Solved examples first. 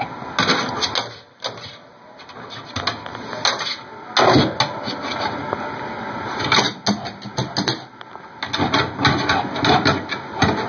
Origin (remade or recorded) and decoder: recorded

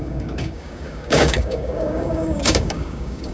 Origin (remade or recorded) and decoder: remade, codec, DAC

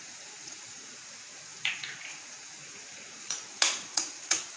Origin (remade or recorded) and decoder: remade, vocoder, Vocos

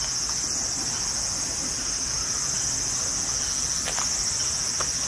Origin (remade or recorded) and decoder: recorded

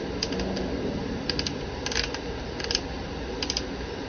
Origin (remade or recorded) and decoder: recorded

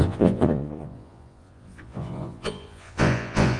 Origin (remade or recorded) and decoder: remade, vocoder, Vocos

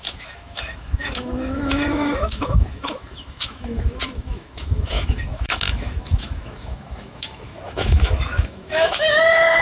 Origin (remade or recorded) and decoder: remade, autoencoder, DAC-VAE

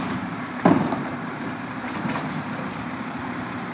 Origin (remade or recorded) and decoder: remade, vocoder, BigVGAN v2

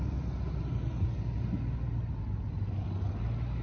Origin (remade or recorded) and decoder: recorded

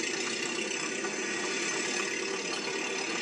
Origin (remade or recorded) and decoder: recorded